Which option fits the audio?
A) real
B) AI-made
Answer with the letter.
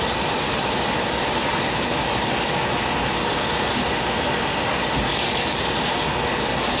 A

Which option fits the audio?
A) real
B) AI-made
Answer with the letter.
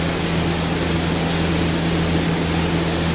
A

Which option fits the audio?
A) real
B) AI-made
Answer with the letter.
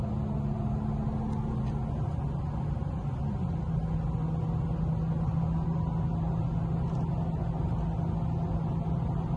A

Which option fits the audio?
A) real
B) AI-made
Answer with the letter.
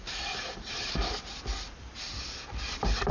A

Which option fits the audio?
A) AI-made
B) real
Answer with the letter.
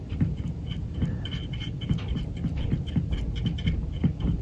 B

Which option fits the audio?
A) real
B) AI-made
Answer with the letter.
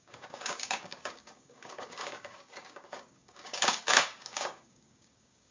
B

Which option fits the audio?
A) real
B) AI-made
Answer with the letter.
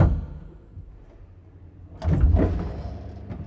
A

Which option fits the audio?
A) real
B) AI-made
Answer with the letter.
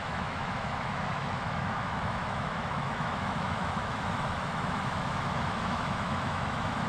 B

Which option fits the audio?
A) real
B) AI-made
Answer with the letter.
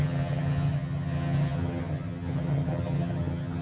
B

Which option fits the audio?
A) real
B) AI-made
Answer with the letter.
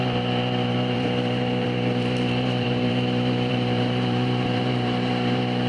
B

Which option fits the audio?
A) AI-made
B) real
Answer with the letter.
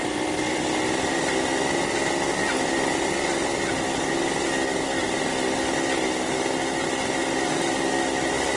B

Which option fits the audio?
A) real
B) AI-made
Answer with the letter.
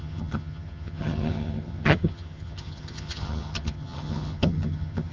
B